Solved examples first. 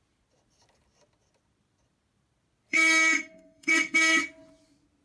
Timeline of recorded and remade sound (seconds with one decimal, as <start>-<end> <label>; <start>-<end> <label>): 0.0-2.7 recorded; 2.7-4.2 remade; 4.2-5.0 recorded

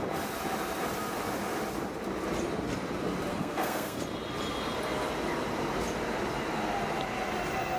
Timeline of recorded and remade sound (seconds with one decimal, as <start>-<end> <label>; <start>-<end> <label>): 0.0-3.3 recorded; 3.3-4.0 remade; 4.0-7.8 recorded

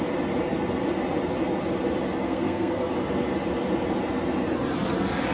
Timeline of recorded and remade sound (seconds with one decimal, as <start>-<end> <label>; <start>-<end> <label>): 0.0-2.2 recorded; 2.2-2.9 remade; 2.9-5.3 recorded